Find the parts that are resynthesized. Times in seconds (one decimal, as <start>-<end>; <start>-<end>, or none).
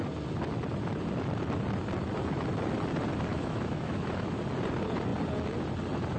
3.3-4.4